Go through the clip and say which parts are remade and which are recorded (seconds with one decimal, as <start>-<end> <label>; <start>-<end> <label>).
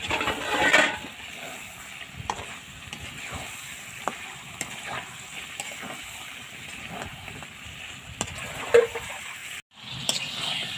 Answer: 0.0-10.8 recorded